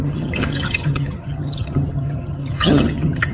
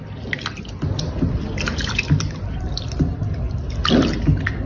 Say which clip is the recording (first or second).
second